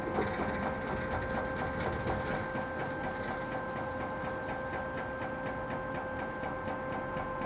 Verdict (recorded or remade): recorded